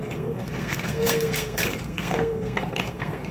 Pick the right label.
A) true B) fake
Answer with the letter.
B